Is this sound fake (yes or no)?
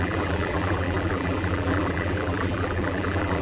yes